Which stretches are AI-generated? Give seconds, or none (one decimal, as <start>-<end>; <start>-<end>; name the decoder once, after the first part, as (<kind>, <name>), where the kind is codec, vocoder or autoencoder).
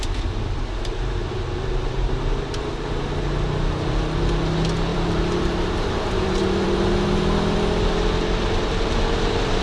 1.2-2.9 (vocoder, BigVGAN v2); 4.9-6.9